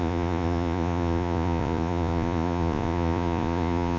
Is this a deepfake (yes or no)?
yes